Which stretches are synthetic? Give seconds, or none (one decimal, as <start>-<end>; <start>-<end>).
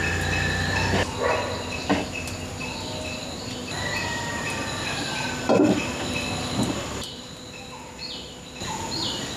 none